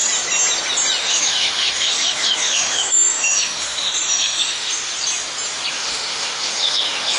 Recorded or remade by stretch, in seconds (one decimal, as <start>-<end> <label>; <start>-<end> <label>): 0.0-1.0 recorded; 1.0-4.9 remade; 4.9-5.7 recorded; 5.7-7.2 remade